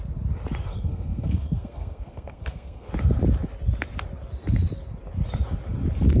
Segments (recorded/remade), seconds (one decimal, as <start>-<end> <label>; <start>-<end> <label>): 0.0-0.7 recorded; 0.7-2.9 remade; 2.9-6.2 recorded